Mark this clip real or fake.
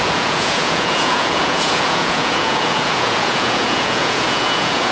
fake